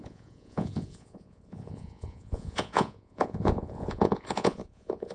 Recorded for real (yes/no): no